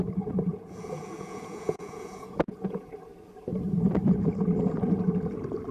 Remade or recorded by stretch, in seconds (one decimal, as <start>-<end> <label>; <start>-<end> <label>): 0.0-0.5 recorded; 0.5-2.9 remade; 2.9-5.7 recorded

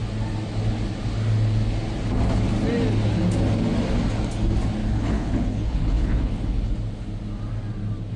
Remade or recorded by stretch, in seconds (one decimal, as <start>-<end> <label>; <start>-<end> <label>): 0.0-4.8 recorded; 4.8-6.7 remade; 6.7-8.2 recorded

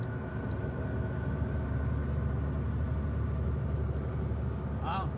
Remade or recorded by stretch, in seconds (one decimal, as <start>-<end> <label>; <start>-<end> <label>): 0.0-5.2 recorded

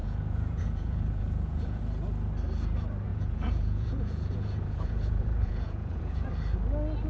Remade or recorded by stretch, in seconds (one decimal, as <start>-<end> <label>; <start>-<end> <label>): 0.0-1.8 remade; 1.8-3.1 recorded; 3.1-6.3 remade; 6.3-7.1 recorded